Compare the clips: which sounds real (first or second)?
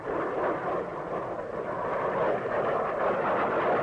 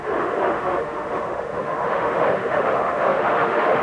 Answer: first